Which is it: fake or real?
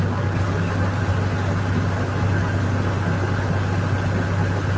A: real